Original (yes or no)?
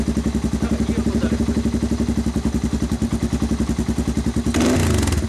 yes